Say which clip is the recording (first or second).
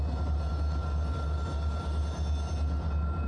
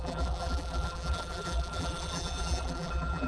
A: first